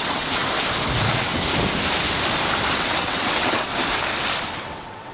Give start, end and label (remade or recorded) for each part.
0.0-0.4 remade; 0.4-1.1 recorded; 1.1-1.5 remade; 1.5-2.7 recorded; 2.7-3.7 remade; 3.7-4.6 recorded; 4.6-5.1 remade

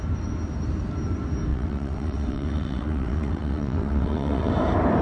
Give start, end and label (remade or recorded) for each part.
0.0-1.5 recorded; 1.5-4.5 remade; 4.5-5.0 recorded